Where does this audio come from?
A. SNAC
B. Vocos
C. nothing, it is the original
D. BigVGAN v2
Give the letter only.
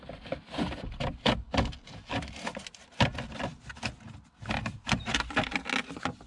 C